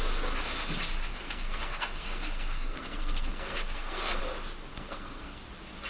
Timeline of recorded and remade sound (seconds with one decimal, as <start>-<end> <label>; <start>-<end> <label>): 0.0-1.1 recorded; 1.1-4.2 remade; 4.2-4.7 recorded; 4.7-5.4 remade; 5.4-5.9 recorded